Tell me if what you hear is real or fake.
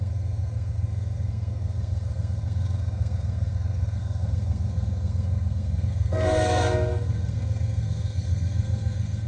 fake